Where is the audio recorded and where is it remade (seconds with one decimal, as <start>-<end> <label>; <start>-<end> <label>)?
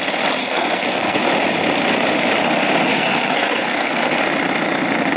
0.0-0.4 recorded; 0.4-1.2 remade; 1.2-2.9 recorded; 2.9-4.2 remade; 4.2-5.2 recorded